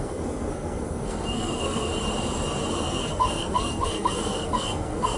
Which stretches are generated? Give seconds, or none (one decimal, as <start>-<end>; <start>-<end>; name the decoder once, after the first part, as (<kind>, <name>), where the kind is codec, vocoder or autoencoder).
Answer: 0.0-1.9 (codec, SNAC); 2.7-5.2